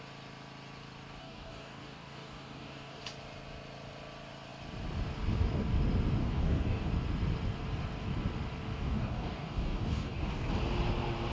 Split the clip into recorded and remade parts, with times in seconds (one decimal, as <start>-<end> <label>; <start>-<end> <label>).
0.0-1.2 recorded; 1.2-3.0 remade; 3.0-6.2 recorded; 6.2-6.9 remade; 6.9-8.7 recorded; 8.7-10.5 remade; 10.5-11.3 recorded